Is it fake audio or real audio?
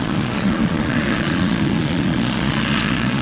fake